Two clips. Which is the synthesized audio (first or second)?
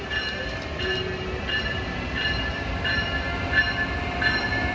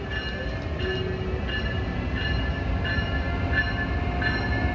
first